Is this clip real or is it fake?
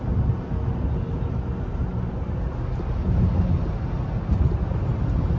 real